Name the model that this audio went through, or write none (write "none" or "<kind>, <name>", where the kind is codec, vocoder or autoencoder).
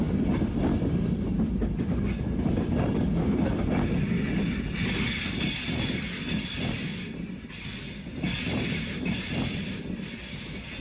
none